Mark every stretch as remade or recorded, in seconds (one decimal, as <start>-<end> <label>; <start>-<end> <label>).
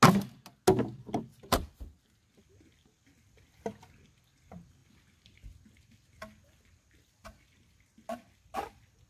0.0-1.3 recorded; 1.3-3.7 remade; 3.7-9.1 recorded